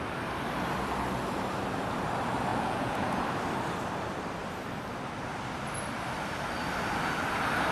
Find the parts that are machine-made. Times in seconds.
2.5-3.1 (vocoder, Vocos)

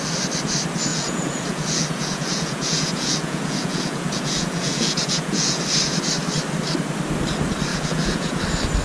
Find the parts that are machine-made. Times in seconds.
0.9-5.6 (vocoder, Vocos); 7.7-8.4

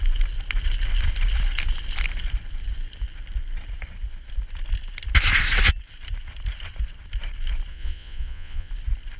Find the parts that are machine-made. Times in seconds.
7.7-8.7 (vocoder, Vocos)

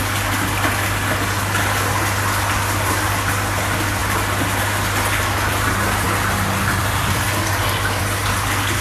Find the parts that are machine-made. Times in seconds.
none

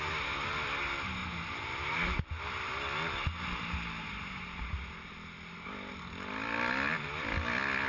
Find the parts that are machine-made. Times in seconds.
none